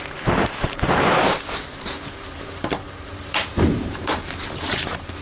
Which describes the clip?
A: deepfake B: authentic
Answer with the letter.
A